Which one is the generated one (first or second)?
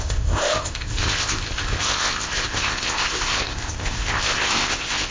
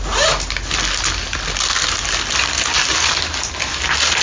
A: first